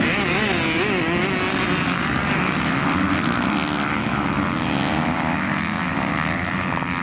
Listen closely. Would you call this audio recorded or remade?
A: recorded